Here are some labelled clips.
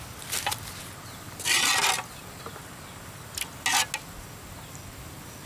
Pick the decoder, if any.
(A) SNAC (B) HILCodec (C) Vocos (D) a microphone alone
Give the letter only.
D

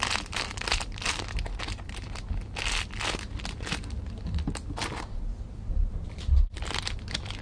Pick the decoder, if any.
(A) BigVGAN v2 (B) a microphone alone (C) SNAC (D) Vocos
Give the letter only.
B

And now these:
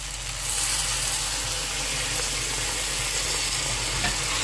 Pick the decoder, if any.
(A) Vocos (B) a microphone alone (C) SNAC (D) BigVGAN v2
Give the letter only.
B